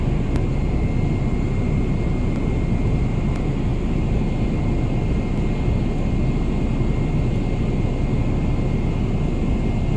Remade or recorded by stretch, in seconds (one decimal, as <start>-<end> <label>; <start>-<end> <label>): 0.0-10.0 recorded